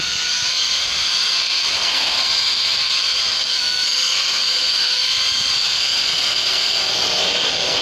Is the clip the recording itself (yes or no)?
no